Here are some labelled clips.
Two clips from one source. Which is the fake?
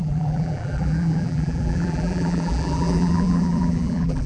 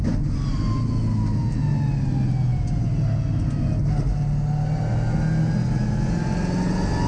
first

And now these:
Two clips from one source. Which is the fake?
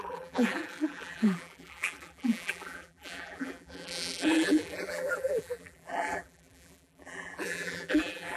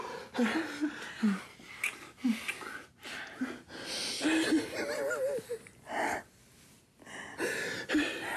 first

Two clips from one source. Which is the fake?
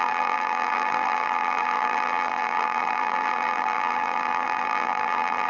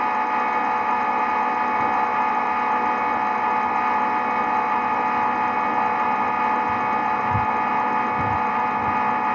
first